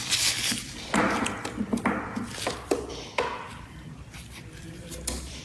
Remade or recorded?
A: remade